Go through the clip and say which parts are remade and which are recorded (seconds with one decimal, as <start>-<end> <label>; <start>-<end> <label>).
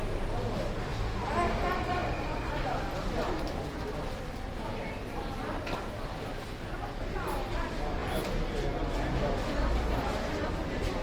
0.0-2.0 recorded; 2.0-6.0 remade; 6.0-11.0 recorded